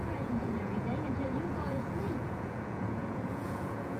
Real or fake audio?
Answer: fake